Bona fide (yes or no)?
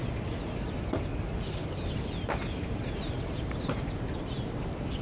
yes